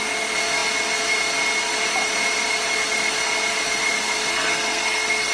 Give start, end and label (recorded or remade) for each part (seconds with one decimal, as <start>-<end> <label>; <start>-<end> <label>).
0.0-4.3 recorded; 4.3-5.3 remade